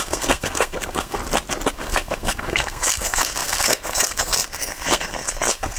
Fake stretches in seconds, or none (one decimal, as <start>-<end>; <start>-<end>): 0.0-1.2; 1.7-5.8